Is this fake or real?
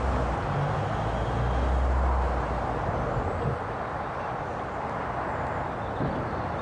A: real